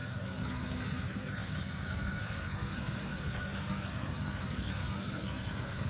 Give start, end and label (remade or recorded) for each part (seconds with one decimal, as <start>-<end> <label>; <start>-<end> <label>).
0.0-5.9 remade